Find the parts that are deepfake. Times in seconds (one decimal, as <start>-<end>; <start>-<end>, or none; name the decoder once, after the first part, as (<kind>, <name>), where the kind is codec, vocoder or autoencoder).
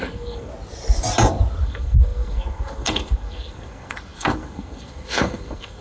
0.0-0.5 (codec, SNAC); 1.6-5.8